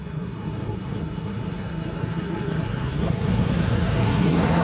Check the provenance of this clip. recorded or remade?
remade